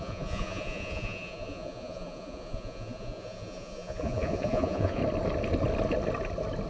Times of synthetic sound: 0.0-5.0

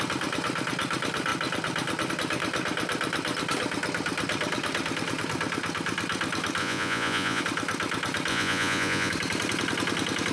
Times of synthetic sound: 6.6-7.4; 8.3-9.1

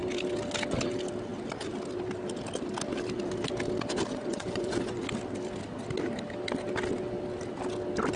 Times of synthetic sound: 4.1-5.0

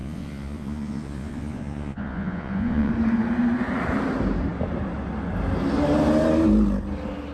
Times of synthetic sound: 0.0-2.9

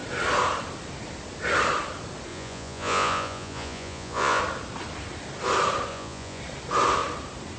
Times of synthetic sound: 2.3-4.4; 5.9-6.4

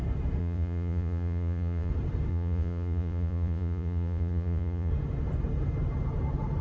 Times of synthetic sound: 0.4-1.9; 2.3-4.9